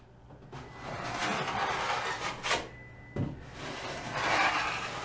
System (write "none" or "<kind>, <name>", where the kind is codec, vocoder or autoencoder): none